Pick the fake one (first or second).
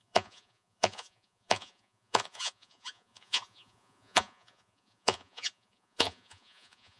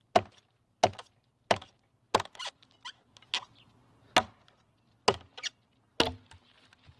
first